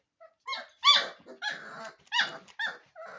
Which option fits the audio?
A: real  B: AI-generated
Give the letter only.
A